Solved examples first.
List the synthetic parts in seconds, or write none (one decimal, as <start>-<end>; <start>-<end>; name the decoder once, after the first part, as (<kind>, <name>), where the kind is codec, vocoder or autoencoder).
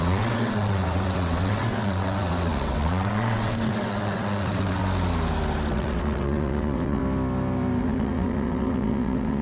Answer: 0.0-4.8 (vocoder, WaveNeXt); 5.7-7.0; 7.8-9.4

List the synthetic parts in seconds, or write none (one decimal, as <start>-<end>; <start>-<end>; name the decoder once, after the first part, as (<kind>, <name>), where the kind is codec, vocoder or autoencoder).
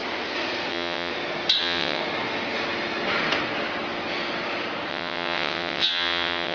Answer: 0.7-1.1 (vocoder, WaveNeXt); 1.6-2.0; 4.9-6.5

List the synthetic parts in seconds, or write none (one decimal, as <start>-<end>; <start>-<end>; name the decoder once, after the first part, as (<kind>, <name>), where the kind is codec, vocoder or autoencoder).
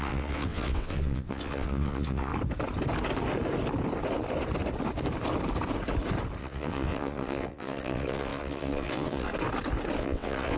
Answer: 0.0-2.3 (vocoder, WaveNeXt); 6.4-9.3; 10.0-10.6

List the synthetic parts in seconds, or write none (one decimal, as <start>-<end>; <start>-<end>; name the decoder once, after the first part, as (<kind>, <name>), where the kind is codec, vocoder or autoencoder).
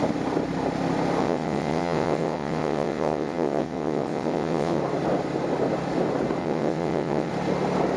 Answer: 1.2-4.8 (vocoder, WaveNeXt); 6.4-7.3